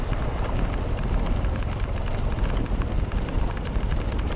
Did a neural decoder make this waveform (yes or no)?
yes